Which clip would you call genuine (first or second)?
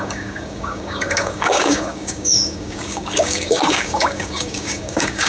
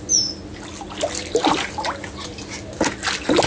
second